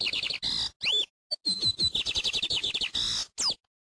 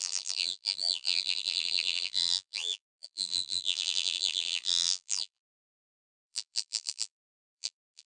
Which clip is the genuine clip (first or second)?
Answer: first